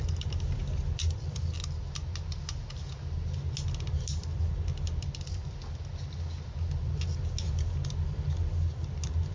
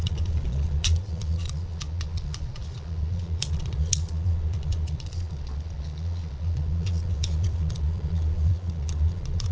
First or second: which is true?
first